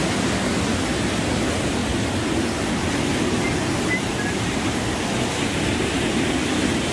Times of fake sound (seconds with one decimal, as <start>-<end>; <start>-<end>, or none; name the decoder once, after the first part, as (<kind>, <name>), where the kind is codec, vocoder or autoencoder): none